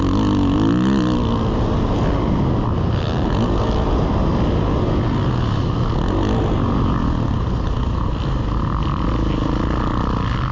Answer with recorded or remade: recorded